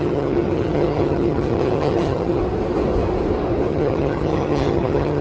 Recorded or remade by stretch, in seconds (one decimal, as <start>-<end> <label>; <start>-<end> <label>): 0.0-2.4 remade; 2.4-3.7 recorded; 3.7-5.2 remade